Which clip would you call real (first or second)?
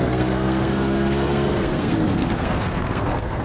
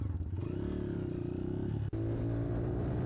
second